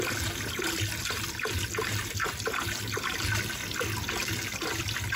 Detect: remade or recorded recorded